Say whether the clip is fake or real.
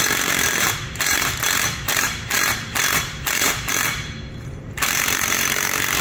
fake